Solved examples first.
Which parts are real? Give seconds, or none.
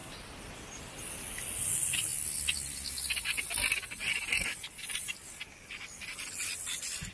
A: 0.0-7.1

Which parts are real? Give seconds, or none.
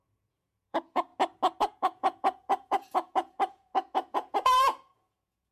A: 1.1-1.6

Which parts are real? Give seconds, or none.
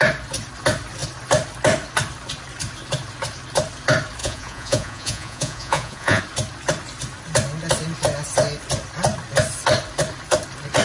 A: 0.0-4.2; 6.2-10.8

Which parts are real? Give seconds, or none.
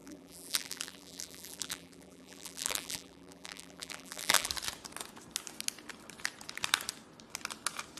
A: 4.5-8.0